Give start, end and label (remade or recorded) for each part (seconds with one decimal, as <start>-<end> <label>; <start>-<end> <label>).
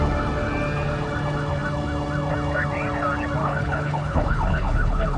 0.0-3.4 recorded; 3.4-5.2 remade